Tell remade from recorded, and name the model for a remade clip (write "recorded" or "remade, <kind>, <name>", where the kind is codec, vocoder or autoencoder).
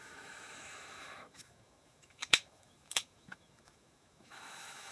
remade, autoencoder, DAC-VAE